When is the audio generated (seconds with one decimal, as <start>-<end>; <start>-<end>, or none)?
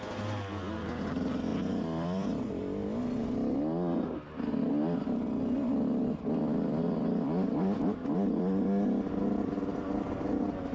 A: 1.5-2.6